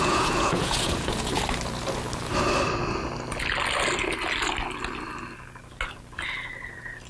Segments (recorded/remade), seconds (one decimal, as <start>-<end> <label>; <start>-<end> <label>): 0.0-1.3 remade; 1.3-7.1 recorded